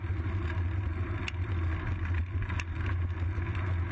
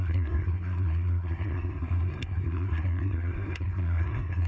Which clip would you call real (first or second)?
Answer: first